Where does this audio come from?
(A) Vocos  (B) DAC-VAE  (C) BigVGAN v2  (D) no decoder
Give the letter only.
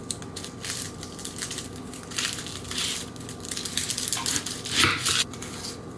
D